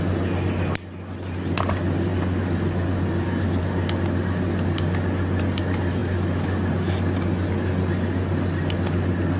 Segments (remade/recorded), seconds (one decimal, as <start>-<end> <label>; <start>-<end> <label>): 0.0-9.4 recorded